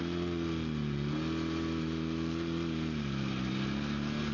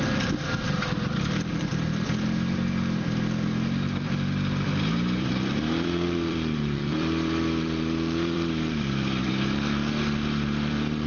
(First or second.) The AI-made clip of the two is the second